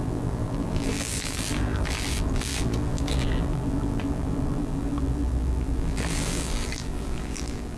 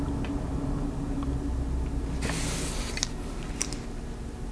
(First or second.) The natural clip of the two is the second